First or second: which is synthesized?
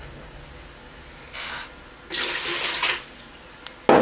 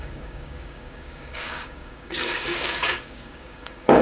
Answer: second